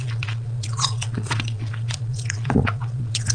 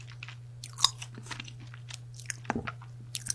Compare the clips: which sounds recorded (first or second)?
second